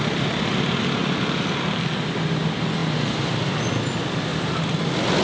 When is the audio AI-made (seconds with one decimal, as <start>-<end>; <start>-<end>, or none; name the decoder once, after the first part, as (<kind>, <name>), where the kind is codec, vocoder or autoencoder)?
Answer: 1.0-1.6 (vocoder, BigVGAN v2); 4.3-4.8